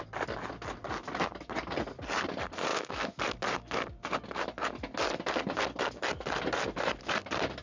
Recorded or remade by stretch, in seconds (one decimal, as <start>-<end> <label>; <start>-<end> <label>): 0.0-2.7 recorded; 2.7-3.2 remade; 3.2-7.6 recorded